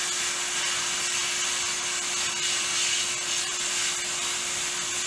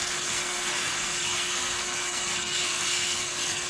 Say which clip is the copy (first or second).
second